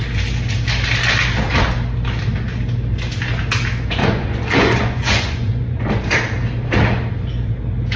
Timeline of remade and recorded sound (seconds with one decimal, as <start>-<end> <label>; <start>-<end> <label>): 0.0-4.0 recorded; 4.0-5.8 remade; 5.8-8.0 recorded